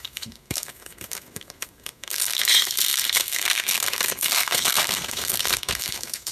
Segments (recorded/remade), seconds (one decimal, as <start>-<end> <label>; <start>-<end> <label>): 0.0-6.3 remade